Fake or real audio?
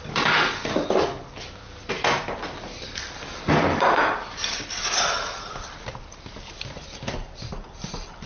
real